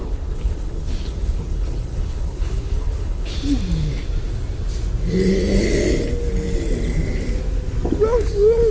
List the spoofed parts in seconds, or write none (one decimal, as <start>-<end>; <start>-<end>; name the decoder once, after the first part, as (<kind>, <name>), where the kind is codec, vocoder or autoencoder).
0.0-3.4 (codec, HILCodec)